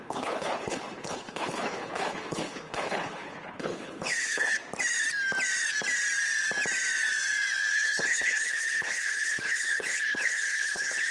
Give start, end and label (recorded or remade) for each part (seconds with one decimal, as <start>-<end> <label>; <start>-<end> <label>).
0.0-4.6 remade; 4.6-7.7 recorded; 7.7-11.1 remade